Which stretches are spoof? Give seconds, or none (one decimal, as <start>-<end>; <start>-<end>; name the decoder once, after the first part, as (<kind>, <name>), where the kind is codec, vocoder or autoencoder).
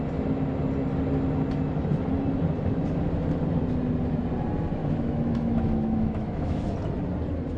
4.8-6.7 (autoencoder, DAC-VAE)